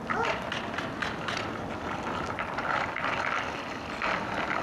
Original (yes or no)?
yes